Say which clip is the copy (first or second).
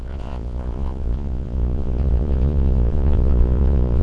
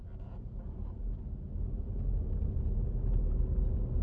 first